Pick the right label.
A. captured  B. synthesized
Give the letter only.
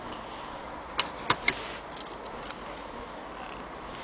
A